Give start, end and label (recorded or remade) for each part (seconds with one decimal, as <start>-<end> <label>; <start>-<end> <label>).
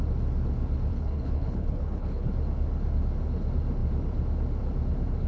0.0-0.9 recorded; 0.9-2.3 remade; 2.3-5.3 recorded